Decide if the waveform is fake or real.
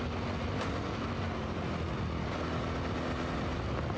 real